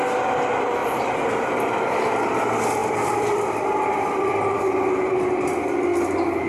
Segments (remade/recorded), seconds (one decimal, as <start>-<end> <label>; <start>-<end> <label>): 0.0-0.8 recorded; 0.8-2.0 remade; 2.0-2.8 recorded; 2.8-4.6 remade; 4.6-6.5 recorded

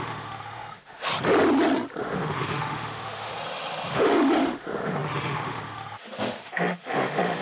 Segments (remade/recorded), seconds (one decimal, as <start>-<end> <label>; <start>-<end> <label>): 0.0-1.1 remade; 1.1-2.0 recorded; 2.0-3.3 remade; 3.3-3.9 recorded; 3.9-7.4 remade

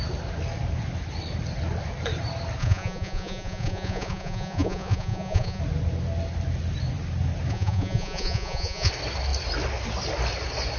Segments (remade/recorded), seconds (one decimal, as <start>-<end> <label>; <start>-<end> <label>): 0.0-2.6 recorded; 2.6-5.6 remade; 5.6-7.5 recorded; 7.5-8.9 remade; 8.9-10.8 recorded

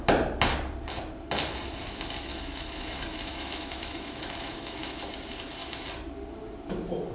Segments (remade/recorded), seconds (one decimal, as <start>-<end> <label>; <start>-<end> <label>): 0.0-2.3 recorded; 2.3-5.0 remade; 5.0-7.1 recorded

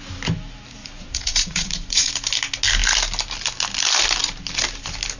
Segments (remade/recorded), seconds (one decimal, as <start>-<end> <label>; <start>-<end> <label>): 0.0-0.8 recorded; 0.8-2.1 remade; 2.1-5.2 recorded

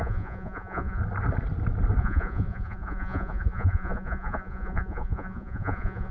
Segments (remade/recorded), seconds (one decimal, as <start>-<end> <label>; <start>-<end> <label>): 0.0-1.0 remade; 1.0-2.0 recorded; 2.0-6.1 remade